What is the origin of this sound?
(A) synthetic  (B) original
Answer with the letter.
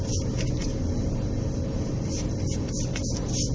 B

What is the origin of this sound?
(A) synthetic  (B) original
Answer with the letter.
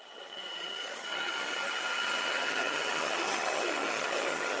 A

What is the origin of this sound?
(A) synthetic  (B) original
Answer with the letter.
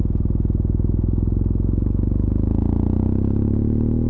B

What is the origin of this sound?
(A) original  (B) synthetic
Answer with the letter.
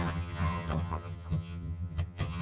B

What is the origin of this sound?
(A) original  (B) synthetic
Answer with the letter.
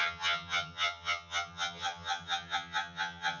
B